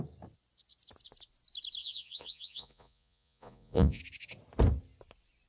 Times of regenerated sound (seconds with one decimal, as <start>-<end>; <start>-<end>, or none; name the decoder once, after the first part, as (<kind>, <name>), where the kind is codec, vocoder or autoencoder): 1.8-4.0 (vocoder, Vocos)